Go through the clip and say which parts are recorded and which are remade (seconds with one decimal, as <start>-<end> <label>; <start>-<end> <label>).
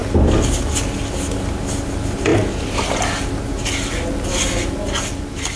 0.0-5.6 recorded